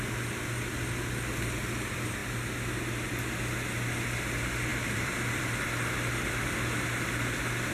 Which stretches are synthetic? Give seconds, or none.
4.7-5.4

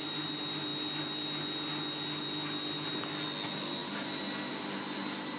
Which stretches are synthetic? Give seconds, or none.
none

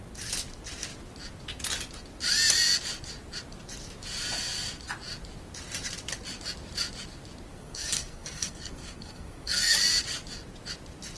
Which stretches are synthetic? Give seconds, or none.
7.5-9.8